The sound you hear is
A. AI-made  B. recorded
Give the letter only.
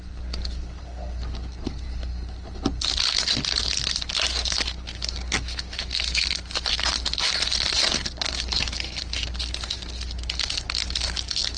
B